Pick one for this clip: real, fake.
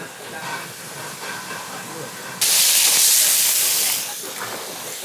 real